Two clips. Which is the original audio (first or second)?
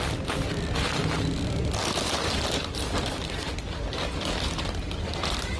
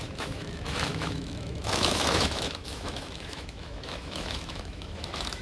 first